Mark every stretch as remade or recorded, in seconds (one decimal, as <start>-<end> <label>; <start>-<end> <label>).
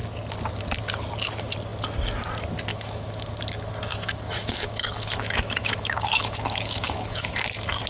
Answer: 0.0-2.7 recorded; 2.7-3.3 remade; 3.3-3.9 recorded; 3.9-7.3 remade; 7.3-7.9 recorded